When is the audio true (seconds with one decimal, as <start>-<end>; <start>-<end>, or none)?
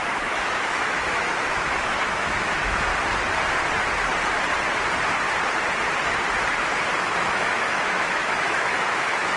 2.9-7.0